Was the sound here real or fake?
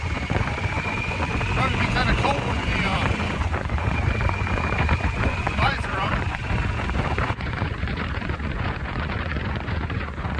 fake